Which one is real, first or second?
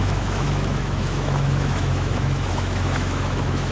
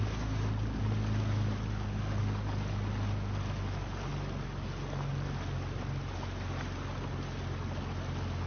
second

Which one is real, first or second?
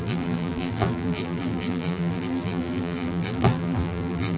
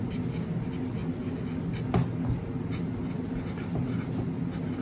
second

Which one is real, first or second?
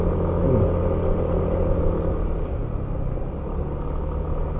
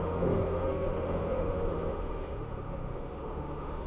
first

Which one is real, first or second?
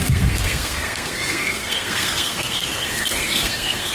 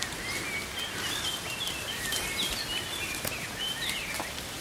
second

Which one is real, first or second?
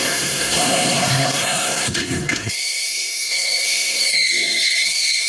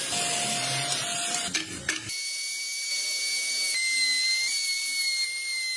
second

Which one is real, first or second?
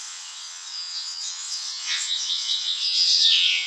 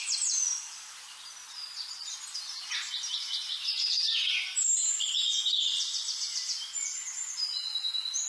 second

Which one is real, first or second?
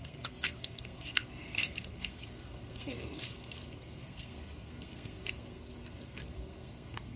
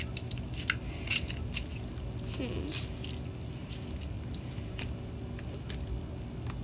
second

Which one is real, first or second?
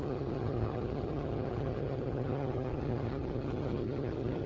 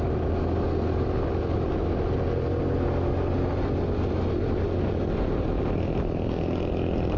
second